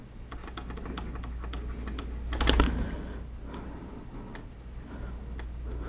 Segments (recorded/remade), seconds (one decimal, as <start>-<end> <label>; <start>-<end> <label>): 0.0-5.9 recorded